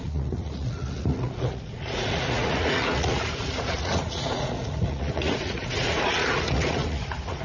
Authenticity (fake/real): fake